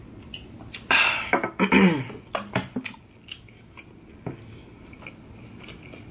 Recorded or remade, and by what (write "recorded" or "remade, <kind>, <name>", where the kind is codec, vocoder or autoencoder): recorded